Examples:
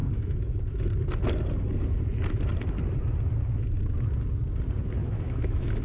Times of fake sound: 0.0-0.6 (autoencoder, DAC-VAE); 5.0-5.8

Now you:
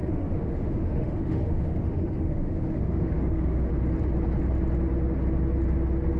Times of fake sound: 0.0-3.7 (autoencoder, DAC-VAE)

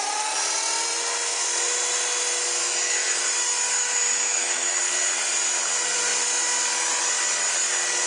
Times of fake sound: 2.6-3.2 (autoencoder, DAC-VAE); 3.8-4.8

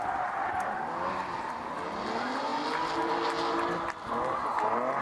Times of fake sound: none

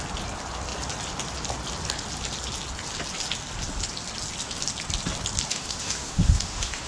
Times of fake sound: 5.5-6.9 (autoencoder, DAC-VAE)

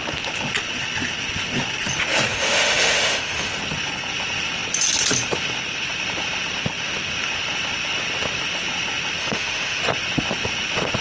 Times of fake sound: 2.3-3.5 (autoencoder, DAC-VAE); 9.2-9.8